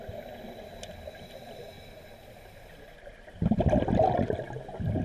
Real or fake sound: real